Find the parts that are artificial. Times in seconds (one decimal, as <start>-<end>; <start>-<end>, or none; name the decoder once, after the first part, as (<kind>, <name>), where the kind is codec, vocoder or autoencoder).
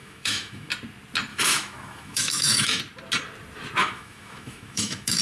0.0-0.7 (autoencoder, DAC-VAE); 1.3-2.8; 3.8-5.2